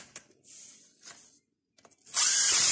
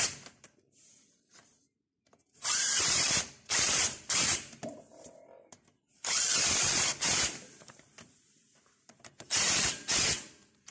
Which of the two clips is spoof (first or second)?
second